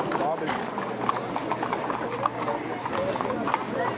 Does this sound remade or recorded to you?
recorded